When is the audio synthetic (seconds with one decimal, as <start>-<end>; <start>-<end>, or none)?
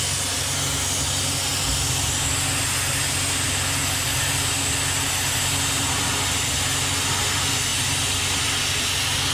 none